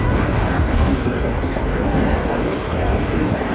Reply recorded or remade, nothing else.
remade